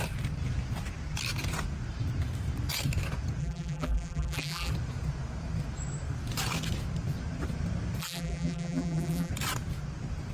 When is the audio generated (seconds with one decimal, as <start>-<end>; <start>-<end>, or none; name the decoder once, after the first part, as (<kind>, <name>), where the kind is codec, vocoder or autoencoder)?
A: 3.4-4.7 (vocoder, BigVGAN v2); 8.0-9.3

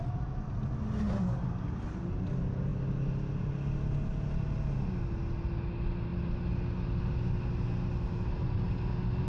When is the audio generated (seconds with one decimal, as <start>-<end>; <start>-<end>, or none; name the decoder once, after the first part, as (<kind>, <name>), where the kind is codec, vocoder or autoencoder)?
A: none

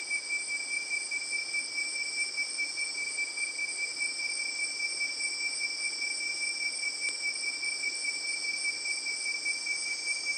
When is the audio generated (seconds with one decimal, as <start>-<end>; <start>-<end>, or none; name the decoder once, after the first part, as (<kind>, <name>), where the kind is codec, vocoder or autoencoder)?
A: 0.0-3.9 (vocoder, BigVGAN v2); 4.6-10.4

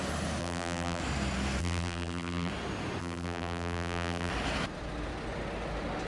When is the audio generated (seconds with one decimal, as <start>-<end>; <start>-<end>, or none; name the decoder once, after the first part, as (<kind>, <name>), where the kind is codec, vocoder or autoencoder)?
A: 0.4-1.0 (vocoder, BigVGAN v2); 1.6-2.5; 3.0-4.3

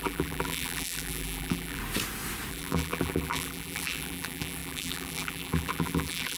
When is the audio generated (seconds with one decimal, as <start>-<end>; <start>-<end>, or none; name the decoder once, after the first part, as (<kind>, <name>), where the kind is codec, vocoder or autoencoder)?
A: 0.0-1.8 (vocoder, BigVGAN v2); 2.5-6.4

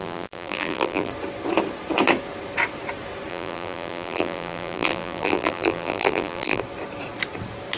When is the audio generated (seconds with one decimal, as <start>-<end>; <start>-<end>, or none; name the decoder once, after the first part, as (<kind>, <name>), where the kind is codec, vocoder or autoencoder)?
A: 0.0-1.1 (vocoder, BigVGAN v2); 3.3-6.6